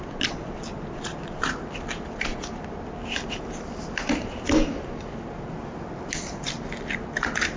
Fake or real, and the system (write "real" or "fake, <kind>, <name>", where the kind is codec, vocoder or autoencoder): real